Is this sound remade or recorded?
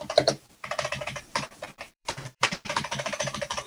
remade